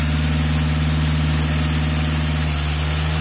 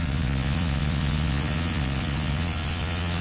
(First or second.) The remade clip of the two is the second